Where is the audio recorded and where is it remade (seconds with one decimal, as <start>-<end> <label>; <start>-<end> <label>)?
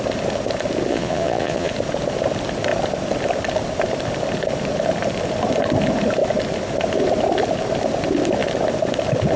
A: 0.0-0.9 recorded; 0.9-1.7 remade; 1.7-9.4 recorded